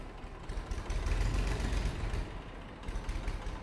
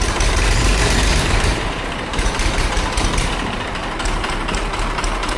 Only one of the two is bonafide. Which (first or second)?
first